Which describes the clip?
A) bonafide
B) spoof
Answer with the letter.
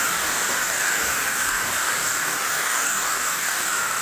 B